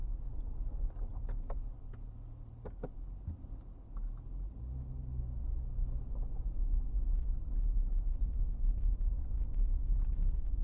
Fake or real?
real